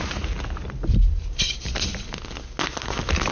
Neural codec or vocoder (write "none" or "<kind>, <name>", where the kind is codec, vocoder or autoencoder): none